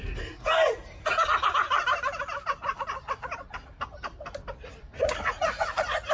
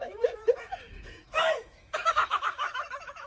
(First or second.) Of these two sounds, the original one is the first